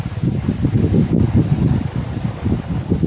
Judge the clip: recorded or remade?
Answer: recorded